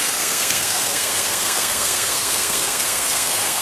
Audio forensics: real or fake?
fake